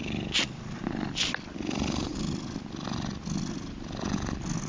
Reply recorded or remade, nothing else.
recorded